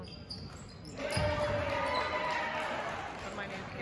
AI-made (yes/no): no